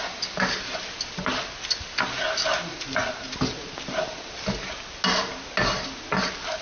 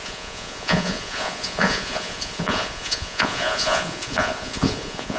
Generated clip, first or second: second